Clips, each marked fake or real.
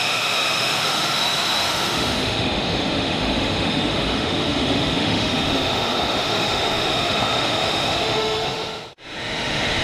fake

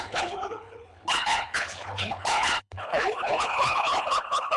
fake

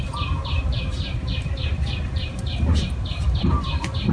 fake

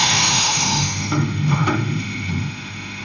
fake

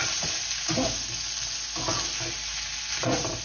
real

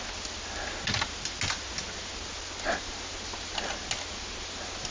real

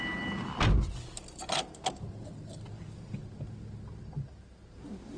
real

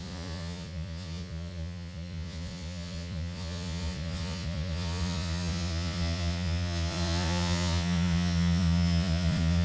fake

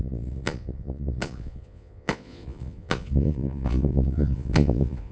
fake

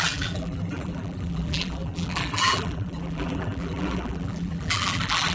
fake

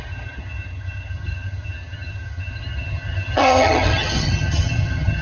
fake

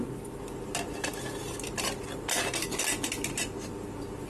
real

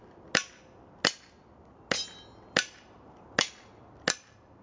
real